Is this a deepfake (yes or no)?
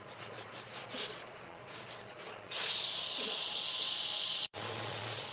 yes